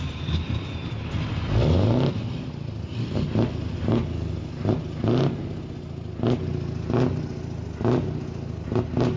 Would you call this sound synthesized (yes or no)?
no